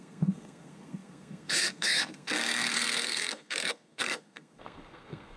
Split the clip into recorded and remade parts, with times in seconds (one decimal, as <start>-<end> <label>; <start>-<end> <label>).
0.0-5.4 remade